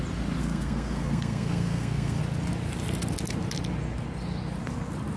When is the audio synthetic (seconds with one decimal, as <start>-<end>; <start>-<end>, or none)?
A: 0.4-2.2